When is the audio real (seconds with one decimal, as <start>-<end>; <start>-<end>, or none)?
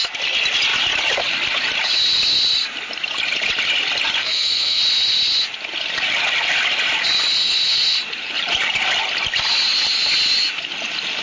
0.0-4.2; 4.8-11.2